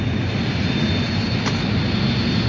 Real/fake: real